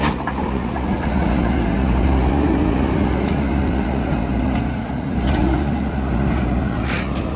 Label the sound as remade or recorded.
remade